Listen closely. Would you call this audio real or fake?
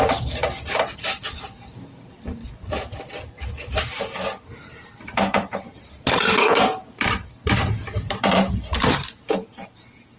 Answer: fake